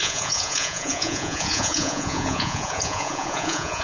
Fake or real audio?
fake